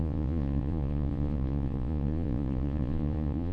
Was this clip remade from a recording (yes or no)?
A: yes